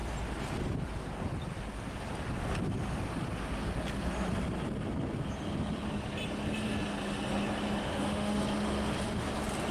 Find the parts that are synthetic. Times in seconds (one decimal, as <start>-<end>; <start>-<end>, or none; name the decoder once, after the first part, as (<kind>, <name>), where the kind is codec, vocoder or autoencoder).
7.8-8.4 (autoencoder, DAC-VAE)